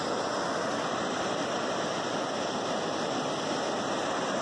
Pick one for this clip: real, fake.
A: real